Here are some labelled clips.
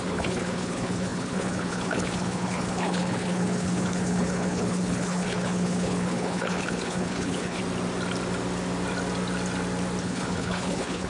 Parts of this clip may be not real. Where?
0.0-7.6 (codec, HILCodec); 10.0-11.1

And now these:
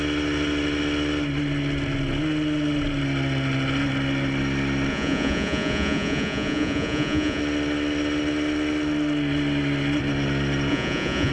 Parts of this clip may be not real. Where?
4.9-7.4 (vocoder, Vocos); 10.7-11.3

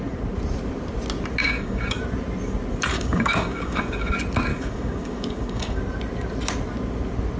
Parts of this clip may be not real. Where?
1.4-2.0 (codec, DAC); 2.9-4.1; 4.5-5.8